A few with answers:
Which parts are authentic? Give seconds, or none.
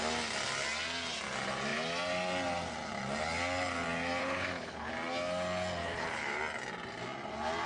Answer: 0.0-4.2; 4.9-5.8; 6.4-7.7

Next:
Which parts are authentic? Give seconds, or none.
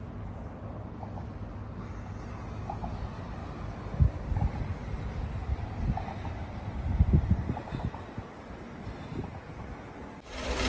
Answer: 0.0-10.7